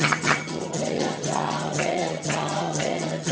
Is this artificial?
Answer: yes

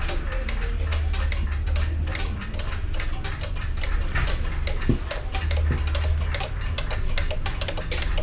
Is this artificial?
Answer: no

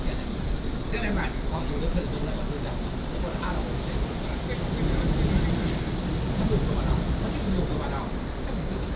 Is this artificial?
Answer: no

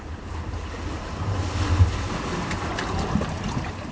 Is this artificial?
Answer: no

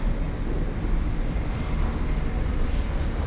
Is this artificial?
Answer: no